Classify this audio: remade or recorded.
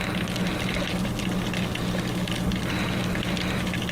recorded